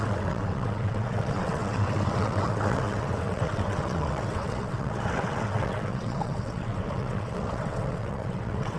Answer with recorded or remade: remade